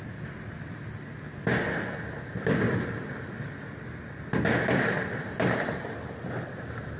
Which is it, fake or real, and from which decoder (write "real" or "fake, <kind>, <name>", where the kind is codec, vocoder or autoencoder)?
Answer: real